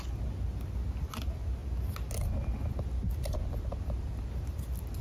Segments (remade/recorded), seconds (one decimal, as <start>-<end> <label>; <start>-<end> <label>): 0.0-5.0 recorded